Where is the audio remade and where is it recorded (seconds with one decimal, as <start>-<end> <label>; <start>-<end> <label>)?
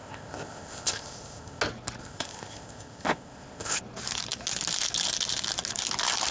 0.0-1.6 remade; 1.6-2.0 recorded; 2.0-3.8 remade; 3.8-6.3 recorded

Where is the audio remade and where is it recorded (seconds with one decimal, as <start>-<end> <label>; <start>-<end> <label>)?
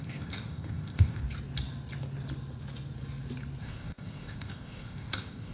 0.0-1.2 remade; 1.2-3.6 recorded; 3.6-5.5 remade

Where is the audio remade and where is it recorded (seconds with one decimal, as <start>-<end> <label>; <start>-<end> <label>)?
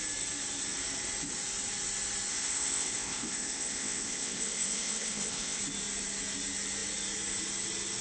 0.0-2.3 recorded; 2.3-5.6 remade; 5.6-8.0 recorded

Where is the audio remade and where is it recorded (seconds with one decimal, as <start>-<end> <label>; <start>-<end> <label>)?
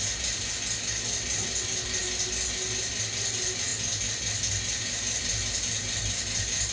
0.0-6.7 recorded